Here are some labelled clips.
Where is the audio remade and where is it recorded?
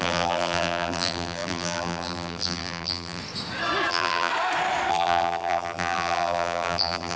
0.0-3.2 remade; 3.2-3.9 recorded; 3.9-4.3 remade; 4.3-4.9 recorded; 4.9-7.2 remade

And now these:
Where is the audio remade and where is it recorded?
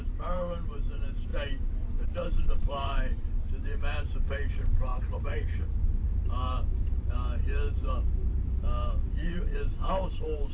0.0-1.3 remade; 1.3-2.6 recorded; 2.6-10.5 remade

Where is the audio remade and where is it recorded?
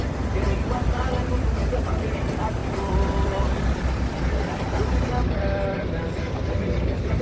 0.0-2.6 recorded; 2.6-7.2 remade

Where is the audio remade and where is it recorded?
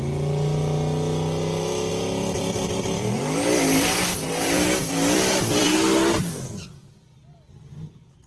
0.0-1.9 recorded; 1.9-6.3 remade; 6.3-8.3 recorded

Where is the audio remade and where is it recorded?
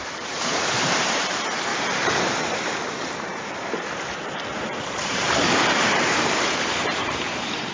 0.0-1.7 remade; 1.7-2.9 recorded; 2.9-7.7 remade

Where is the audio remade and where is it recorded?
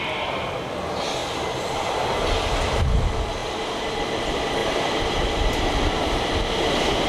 0.0-1.2 recorded; 1.2-1.7 remade; 1.7-4.6 recorded; 4.6-5.7 remade; 5.7-7.1 recorded